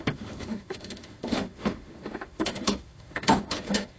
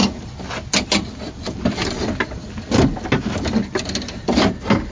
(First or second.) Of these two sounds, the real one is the second